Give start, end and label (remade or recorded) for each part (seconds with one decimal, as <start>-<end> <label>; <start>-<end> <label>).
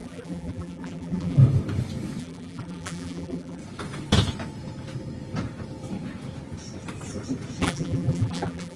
0.0-1.4 remade; 1.4-2.2 recorded; 2.2-3.6 remade; 3.6-7.6 recorded; 7.6-8.8 remade